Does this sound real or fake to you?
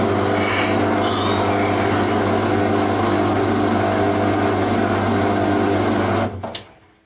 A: real